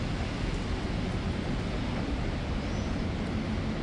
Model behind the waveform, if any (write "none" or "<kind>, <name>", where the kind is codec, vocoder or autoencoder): none